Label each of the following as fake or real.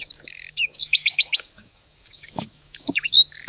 fake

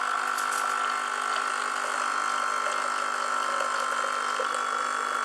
real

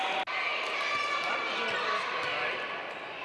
real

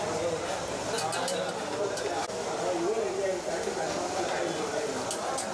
real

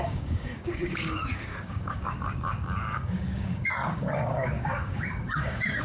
fake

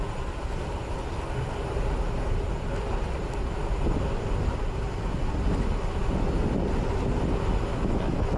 real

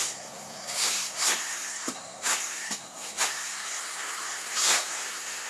fake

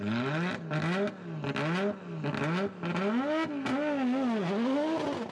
real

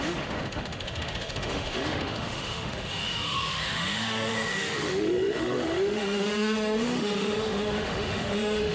fake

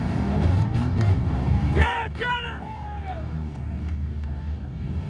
fake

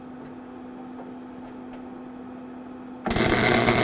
real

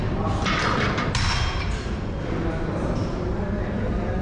real